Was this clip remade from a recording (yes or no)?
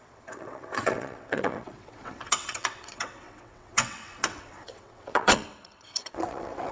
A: yes